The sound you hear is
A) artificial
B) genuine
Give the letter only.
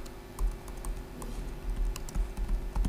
B